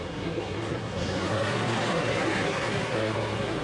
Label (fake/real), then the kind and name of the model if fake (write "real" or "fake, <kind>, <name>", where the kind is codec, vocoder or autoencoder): fake, codec, SNAC